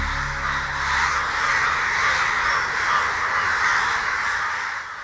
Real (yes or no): yes